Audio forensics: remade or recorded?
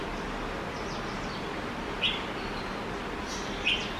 recorded